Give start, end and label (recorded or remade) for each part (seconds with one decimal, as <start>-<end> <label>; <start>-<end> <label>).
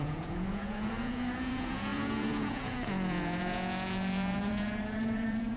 0.0-5.6 remade